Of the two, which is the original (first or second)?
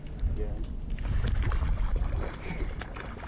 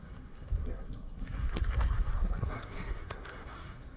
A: first